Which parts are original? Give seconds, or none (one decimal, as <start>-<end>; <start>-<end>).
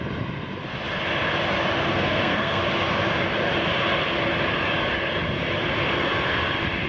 0.0-1.9; 2.6-6.9